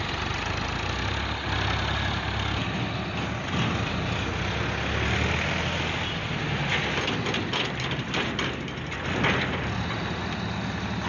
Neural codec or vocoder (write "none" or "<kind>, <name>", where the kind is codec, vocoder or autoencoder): none